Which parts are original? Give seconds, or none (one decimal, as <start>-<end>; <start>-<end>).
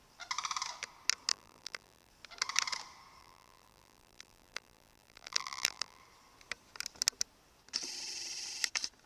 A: 0.0-1.3; 2.1-3.2; 6.0-9.1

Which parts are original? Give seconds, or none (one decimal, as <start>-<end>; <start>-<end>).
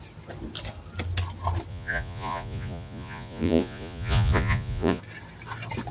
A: 0.0-1.7; 5.0-5.9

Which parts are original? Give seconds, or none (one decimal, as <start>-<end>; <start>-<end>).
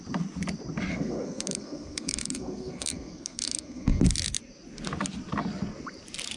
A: 0.0-0.9; 4.0-6.4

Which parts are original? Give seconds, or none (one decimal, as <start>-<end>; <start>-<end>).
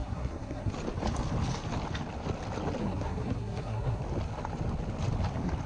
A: 0.7-2.8; 4.0-5.7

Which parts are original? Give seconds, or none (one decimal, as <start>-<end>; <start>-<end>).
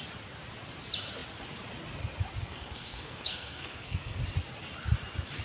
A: 0.0-2.4; 4.2-5.4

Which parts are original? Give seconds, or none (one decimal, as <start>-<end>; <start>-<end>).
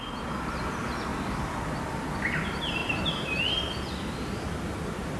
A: 0.0-1.1; 2.1-2.8; 4.5-5.2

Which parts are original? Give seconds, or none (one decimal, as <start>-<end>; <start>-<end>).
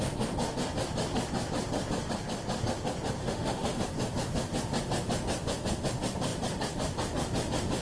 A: 0.0-3.2; 3.8-7.8